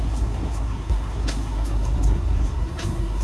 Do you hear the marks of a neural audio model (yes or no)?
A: yes